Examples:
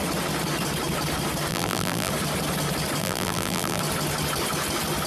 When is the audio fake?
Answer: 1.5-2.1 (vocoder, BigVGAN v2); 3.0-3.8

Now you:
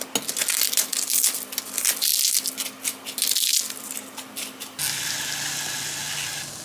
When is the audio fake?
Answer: none

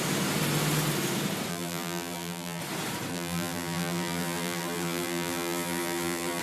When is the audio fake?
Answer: 1.5-2.6 (vocoder, BigVGAN v2); 3.1-6.4